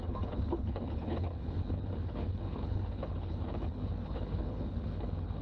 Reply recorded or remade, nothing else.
remade